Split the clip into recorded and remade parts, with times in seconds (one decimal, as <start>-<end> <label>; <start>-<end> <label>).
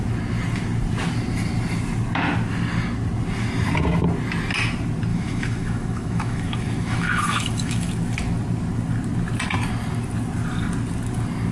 0.0-5.1 recorded; 5.1-7.9 remade; 7.9-11.5 recorded